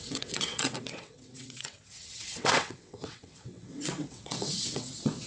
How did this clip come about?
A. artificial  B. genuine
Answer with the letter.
A